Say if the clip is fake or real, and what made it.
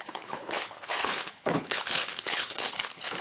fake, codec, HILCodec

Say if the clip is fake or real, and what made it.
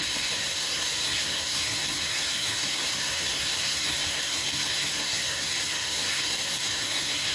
fake, codec, SNAC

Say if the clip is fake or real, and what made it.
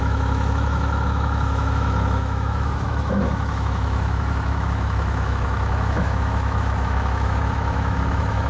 fake, autoencoder, DAC-VAE